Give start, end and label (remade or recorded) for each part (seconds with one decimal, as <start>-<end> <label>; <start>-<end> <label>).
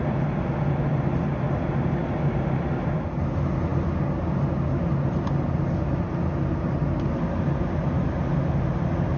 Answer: 0.0-9.2 recorded